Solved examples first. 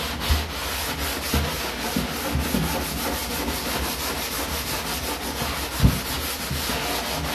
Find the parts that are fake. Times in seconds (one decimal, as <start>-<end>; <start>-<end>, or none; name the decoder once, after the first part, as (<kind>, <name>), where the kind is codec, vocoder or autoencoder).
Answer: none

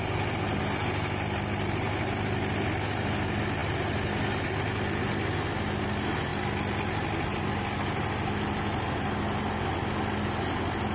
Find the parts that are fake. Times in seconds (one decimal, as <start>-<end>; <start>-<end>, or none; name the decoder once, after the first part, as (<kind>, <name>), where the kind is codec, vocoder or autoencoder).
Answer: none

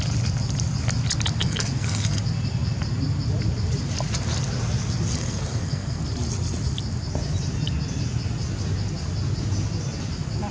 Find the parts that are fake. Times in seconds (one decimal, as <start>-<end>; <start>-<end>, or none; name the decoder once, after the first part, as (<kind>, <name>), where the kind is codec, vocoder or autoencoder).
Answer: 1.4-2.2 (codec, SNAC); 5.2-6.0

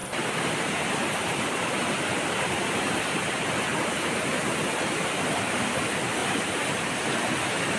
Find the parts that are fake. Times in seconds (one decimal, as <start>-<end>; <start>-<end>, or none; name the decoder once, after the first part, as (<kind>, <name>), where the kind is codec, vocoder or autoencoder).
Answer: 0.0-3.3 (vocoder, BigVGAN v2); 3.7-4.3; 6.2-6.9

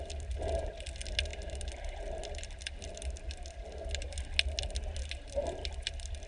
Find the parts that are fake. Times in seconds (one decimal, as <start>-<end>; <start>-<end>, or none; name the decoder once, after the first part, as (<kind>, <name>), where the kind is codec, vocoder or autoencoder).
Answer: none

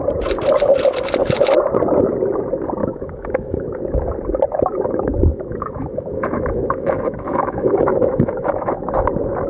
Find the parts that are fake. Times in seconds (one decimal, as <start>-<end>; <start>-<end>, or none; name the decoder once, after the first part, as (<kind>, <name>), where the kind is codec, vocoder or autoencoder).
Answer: 2.8-3.8 (autoencoder, DAC-VAE); 5.3-8.9